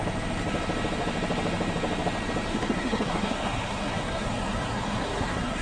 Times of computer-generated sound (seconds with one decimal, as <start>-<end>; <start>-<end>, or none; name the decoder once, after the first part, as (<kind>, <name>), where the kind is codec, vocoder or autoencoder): 2.5-5.6 (codec, SNAC)